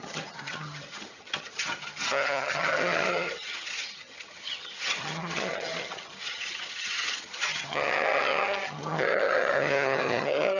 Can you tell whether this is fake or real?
fake